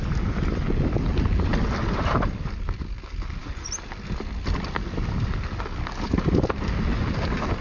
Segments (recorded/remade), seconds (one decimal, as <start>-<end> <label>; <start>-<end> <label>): 0.0-7.6 recorded